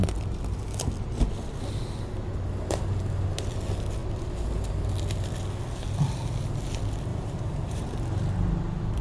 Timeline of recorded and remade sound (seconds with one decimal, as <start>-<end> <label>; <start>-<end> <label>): 0.0-7.1 recorded; 7.1-7.8 remade; 7.8-9.0 recorded